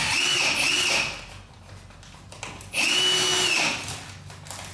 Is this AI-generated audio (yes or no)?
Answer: no